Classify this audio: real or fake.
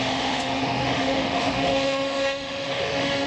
fake